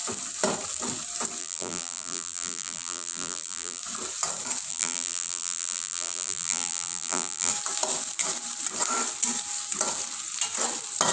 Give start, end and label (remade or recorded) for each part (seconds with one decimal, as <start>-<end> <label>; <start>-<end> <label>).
0.0-1.4 recorded; 1.4-3.8 remade; 3.8-4.7 recorded; 4.7-7.5 remade; 7.5-11.1 recorded